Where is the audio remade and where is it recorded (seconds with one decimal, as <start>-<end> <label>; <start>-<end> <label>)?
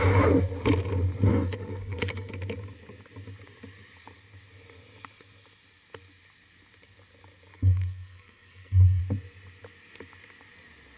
0.0-1.3 recorded; 1.3-2.3 remade; 2.3-7.5 recorded; 7.5-9.0 remade; 9.0-11.0 recorded